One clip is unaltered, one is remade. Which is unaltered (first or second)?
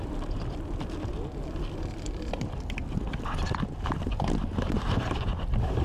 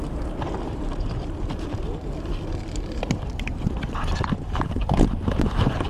first